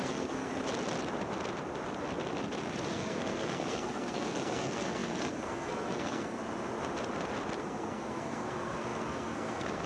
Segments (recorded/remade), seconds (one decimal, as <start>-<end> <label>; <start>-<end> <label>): 0.0-0.5 remade; 0.5-2.9 recorded; 2.9-6.4 remade; 6.4-7.6 recorded; 7.6-9.9 remade